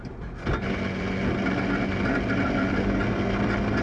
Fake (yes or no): no